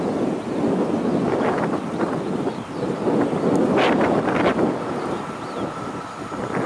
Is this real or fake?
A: real